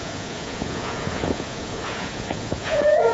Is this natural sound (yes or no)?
no